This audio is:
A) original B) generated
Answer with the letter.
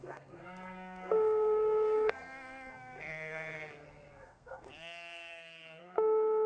B